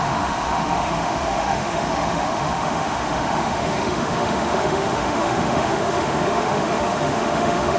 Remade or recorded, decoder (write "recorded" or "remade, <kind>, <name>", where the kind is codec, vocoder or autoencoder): remade, autoencoder, DAC-VAE